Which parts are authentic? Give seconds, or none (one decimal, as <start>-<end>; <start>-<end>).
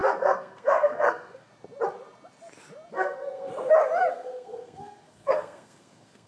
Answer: 1.5-2.9; 3.5-4.1